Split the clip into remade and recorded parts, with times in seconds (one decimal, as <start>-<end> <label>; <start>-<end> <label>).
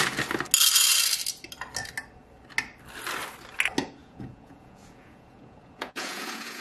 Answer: 0.0-4.0 recorded; 4.0-6.6 remade